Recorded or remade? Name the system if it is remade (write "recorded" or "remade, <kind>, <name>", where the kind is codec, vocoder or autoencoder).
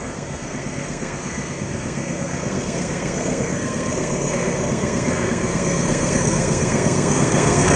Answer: remade, codec, SNAC